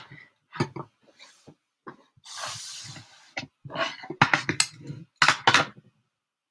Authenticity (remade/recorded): recorded